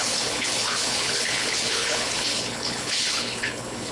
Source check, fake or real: fake